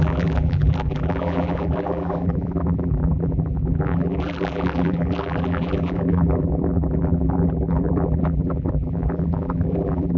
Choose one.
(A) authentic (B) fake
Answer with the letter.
B